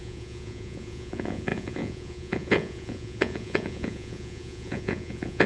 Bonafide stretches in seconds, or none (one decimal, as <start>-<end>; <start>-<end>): none

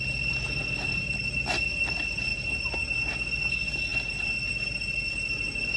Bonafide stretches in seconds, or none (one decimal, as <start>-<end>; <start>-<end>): 0.0-5.8